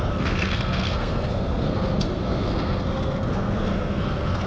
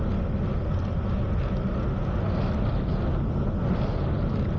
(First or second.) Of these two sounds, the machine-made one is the first